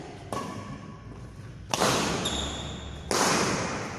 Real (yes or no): yes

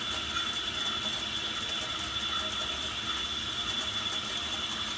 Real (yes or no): yes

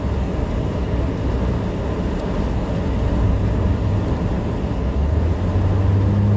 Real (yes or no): yes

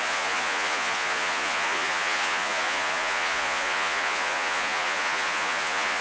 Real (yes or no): no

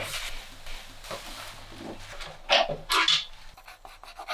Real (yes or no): yes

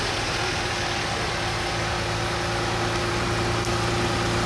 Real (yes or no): yes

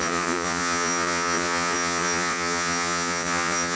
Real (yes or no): no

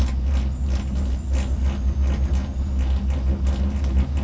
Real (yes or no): yes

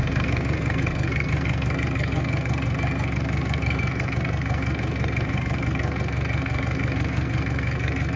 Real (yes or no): no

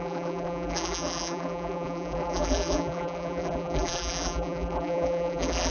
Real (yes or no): no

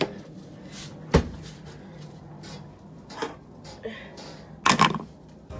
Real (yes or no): yes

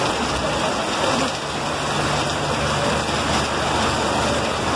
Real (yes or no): yes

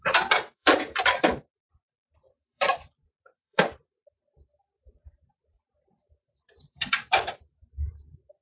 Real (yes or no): no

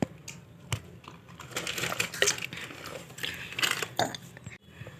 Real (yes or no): yes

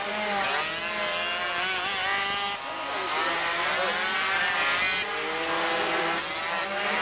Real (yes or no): yes